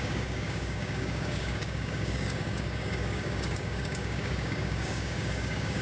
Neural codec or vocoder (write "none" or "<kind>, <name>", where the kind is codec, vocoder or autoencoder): codec, DAC